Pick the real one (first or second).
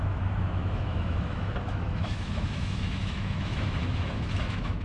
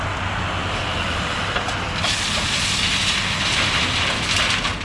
second